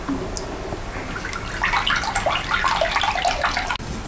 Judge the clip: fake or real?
real